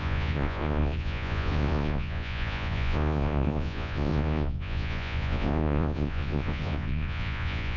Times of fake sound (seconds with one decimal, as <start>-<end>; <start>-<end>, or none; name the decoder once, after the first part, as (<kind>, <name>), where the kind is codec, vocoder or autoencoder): 0.0-7.8 (vocoder, Vocos)